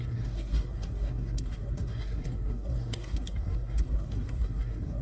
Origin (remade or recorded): remade